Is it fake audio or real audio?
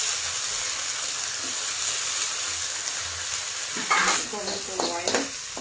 real